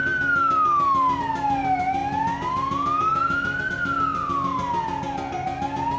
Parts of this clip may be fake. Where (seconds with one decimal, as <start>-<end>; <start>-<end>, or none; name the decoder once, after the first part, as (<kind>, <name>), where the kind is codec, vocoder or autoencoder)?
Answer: none